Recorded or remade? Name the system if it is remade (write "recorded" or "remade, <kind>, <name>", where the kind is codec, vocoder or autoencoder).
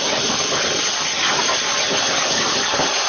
recorded